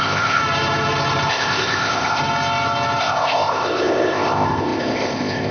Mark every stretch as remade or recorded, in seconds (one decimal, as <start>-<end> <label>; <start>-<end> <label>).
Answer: 0.0-0.4 remade; 0.4-1.3 recorded; 1.3-2.2 remade; 2.2-3.0 recorded; 3.0-5.5 remade